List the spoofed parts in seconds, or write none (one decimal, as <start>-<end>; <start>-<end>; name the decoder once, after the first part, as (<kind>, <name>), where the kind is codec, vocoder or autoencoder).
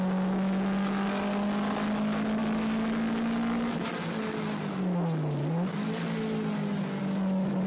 none